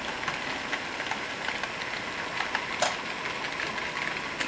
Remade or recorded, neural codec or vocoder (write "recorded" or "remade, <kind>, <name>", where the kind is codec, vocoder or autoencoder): recorded